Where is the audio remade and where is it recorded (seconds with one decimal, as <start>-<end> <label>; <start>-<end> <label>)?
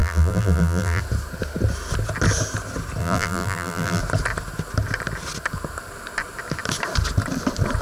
0.0-1.0 remade; 1.0-3.0 recorded; 3.0-4.0 remade; 4.0-7.8 recorded